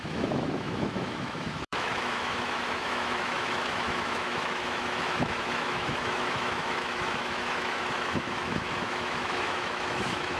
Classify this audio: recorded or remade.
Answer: remade